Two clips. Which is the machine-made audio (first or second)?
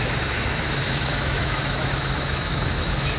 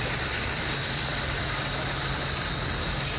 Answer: first